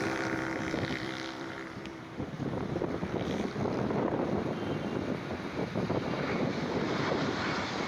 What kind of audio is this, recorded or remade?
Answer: remade